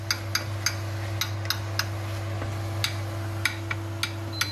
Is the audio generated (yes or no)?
no